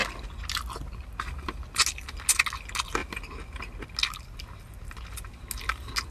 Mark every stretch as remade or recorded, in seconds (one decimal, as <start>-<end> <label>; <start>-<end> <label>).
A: 0.0-6.1 recorded